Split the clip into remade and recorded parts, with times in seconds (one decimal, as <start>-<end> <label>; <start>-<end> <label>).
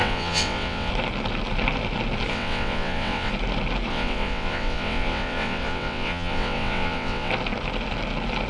0.0-0.9 remade; 0.9-2.3 recorded; 2.3-3.3 remade; 3.3-3.9 recorded; 3.9-7.3 remade; 7.3-8.5 recorded